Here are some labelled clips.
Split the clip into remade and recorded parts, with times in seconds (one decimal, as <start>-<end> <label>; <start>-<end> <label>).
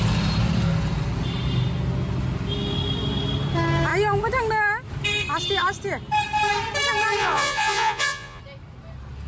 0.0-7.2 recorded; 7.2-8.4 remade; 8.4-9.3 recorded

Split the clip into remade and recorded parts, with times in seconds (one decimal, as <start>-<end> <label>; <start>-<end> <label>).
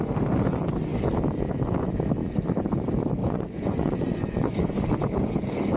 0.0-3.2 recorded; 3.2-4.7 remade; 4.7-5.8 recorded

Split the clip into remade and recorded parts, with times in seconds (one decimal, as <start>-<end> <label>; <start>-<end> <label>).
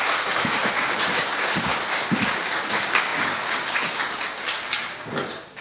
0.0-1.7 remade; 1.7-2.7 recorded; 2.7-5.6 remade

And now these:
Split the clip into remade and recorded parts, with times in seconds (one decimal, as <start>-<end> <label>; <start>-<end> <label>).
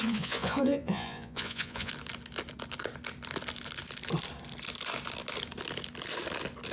0.0-1.9 remade; 1.9-6.7 recorded